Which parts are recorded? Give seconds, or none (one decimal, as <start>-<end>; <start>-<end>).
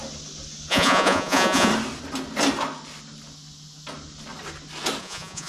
0.0-0.7; 1.7-5.0